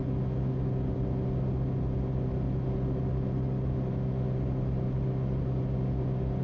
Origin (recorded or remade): recorded